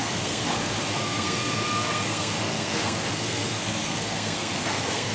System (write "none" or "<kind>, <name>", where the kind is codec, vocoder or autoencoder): codec, SNAC